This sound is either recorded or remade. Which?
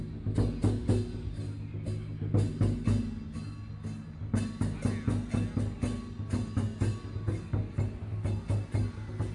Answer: recorded